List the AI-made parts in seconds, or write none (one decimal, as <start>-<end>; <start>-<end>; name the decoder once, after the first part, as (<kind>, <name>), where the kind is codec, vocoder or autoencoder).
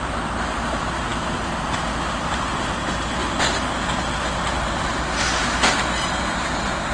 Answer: 0.0-3.2 (vocoder, BigVGAN v2)